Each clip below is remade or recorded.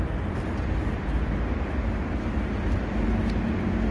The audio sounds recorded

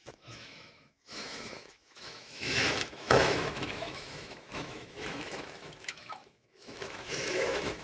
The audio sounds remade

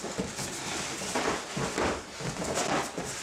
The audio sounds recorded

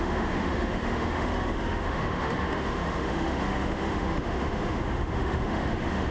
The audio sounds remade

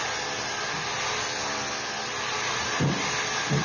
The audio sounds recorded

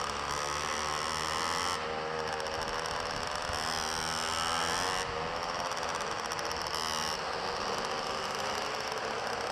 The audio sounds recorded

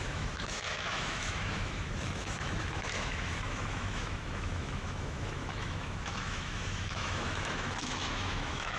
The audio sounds remade